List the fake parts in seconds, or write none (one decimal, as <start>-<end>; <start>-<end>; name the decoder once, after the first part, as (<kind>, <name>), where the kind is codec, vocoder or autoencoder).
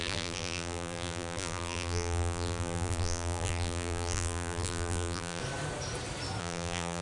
0.0-5.4 (vocoder, BigVGAN v2); 6.4-7.0